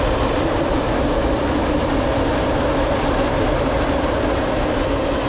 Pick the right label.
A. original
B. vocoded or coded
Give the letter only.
A